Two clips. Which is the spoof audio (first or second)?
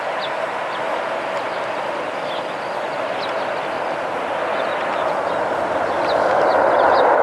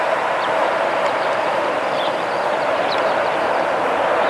second